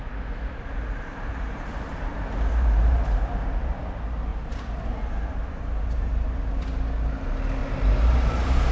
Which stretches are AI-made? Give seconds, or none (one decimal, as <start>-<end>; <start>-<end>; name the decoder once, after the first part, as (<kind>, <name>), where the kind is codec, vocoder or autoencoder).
0.5-3.2 (vocoder, BigVGAN v2); 4.3-6.6; 7.6-8.7